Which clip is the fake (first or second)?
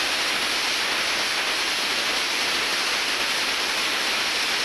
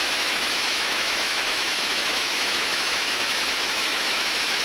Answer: second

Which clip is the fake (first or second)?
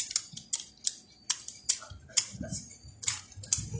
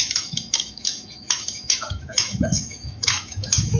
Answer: second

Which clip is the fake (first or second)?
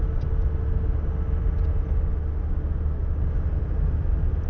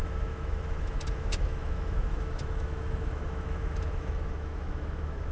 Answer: second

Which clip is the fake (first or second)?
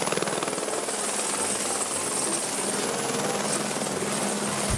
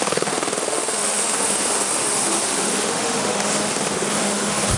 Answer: second